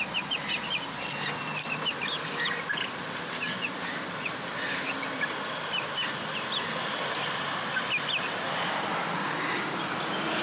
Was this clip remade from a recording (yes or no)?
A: no